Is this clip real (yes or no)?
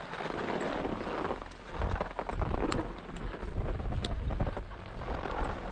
yes